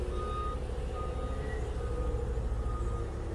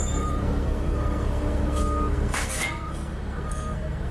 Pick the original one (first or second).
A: first